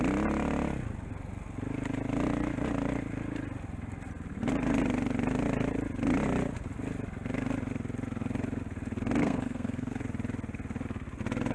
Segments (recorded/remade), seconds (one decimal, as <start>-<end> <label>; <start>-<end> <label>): 0.0-9.2 recorded; 9.2-10.0 remade; 10.0-11.5 recorded